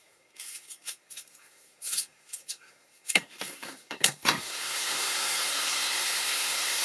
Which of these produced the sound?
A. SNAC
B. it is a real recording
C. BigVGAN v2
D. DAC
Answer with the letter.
A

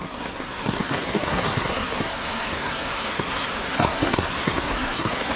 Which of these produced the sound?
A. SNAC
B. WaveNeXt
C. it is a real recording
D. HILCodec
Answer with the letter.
A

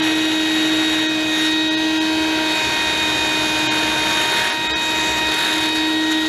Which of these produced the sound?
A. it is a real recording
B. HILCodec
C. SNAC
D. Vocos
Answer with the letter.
A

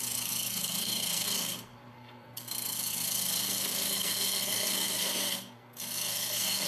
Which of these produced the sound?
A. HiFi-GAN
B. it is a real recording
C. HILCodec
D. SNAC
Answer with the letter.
D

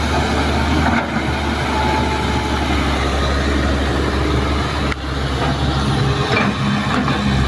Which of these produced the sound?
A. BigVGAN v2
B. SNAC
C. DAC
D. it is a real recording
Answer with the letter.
D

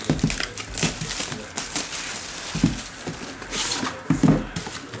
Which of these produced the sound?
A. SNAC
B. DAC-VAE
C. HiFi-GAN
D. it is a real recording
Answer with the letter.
D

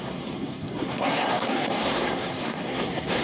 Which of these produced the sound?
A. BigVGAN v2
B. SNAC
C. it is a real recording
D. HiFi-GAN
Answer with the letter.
B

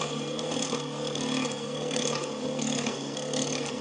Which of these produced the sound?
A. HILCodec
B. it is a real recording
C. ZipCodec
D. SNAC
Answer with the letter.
D